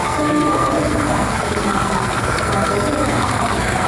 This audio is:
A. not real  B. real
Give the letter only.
A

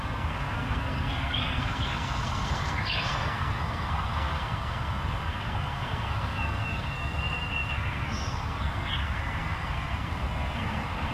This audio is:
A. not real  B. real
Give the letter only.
A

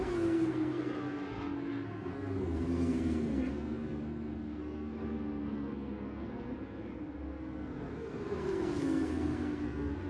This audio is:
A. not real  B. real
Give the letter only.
A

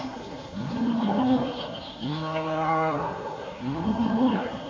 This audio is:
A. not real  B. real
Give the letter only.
A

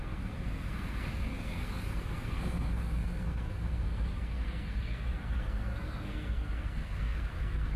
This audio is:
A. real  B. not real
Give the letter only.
B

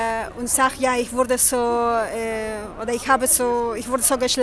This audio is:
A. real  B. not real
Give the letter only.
A